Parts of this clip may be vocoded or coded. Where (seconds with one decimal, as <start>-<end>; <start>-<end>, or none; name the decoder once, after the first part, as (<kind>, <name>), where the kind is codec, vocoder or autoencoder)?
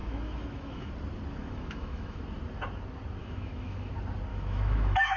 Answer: 0.0-0.9 (autoencoder, DAC-VAE); 1.4-2.2; 3.2-3.9; 4.3-5.2